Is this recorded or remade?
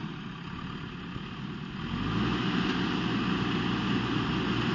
recorded